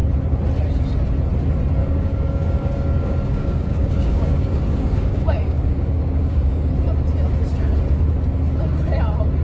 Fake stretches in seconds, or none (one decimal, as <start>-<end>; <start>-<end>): 1.8-6.7